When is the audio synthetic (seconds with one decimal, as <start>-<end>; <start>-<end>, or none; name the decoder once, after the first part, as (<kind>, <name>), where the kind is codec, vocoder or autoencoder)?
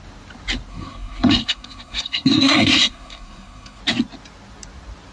0.7-3.8 (codec, SNAC)